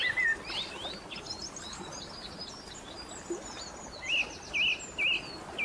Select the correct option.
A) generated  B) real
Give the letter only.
B